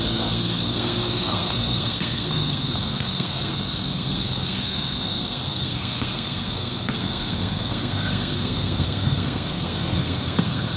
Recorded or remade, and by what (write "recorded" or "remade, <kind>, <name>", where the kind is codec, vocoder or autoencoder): remade, codec, SNAC